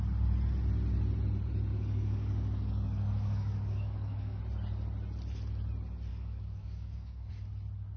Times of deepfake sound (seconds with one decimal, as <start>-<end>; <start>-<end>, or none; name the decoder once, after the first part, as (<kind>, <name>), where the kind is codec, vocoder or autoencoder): 1.7-4.4 (codec, DAC); 6.1-7.3